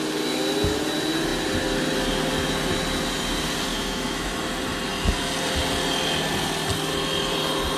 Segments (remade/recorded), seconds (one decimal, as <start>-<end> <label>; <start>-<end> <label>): 0.0-3.7 recorded; 3.7-4.3 remade; 4.3-7.8 recorded